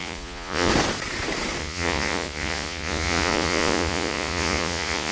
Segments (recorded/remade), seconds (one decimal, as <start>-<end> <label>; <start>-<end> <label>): 0.0-0.7 remade; 0.7-1.6 recorded; 1.6-5.1 remade